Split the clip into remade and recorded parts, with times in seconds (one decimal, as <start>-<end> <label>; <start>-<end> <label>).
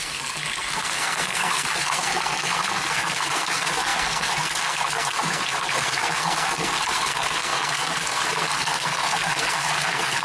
0.0-10.2 remade